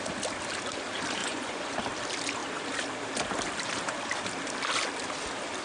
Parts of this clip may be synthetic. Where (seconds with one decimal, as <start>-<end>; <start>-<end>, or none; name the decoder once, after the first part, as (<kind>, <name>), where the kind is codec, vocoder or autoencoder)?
1.2-1.8 (vocoder, Vocos)